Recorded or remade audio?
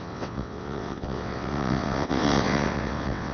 remade